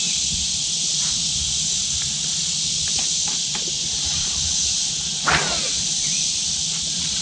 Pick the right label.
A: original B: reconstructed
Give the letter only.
A